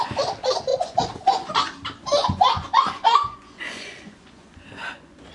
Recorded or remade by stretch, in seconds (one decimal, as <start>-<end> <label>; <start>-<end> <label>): 0.0-0.7 recorded; 0.7-1.5 remade; 1.5-2.2 recorded; 2.2-5.3 remade